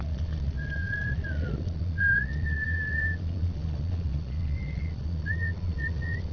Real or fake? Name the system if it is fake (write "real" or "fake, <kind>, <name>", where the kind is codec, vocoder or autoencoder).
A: fake, vocoder, Vocos